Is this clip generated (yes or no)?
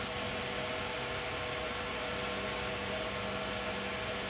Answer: no